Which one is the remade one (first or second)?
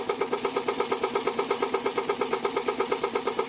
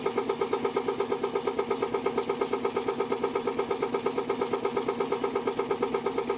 first